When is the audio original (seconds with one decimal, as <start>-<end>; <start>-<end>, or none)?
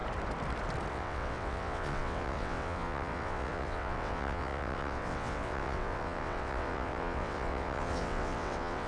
0.0-0.9